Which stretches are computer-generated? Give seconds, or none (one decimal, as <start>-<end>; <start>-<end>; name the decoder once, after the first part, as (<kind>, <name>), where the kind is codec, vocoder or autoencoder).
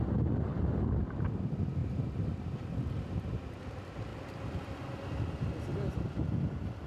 1.8-3.6 (vocoder, BigVGAN v2)